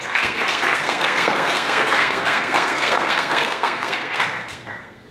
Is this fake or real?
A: fake